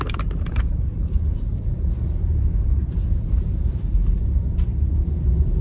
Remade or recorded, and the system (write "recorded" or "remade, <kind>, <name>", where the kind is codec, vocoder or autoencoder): remade, vocoder, BigVGAN v2